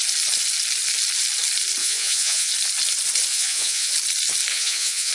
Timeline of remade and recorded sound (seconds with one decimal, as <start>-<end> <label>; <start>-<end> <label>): 0.0-1.8 recorded; 1.8-2.5 remade; 2.5-3.3 recorded; 3.3-3.9 remade; 3.9-4.5 recorded; 4.5-5.1 remade